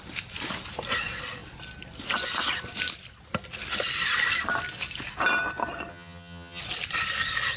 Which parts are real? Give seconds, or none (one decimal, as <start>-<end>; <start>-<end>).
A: 0.0-5.9; 6.6-7.6

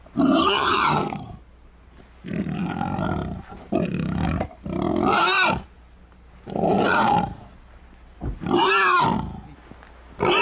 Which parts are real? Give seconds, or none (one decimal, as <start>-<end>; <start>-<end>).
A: 0.0-0.4; 1.3-10.4

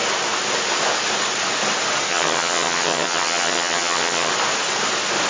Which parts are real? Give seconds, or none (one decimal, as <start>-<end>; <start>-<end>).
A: 0.0-2.1; 4.3-5.3